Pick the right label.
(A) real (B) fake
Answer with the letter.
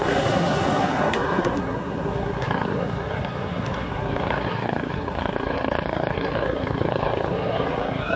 B